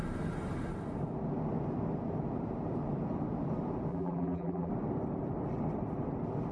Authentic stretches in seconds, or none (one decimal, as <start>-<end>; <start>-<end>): 0.0-3.9; 4.7-6.5